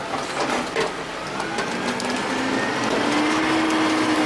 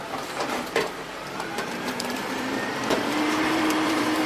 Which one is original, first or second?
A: first